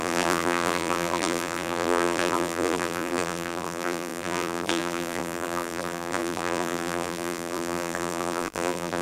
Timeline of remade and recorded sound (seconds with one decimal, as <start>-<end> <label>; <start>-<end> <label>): 0.0-9.0 remade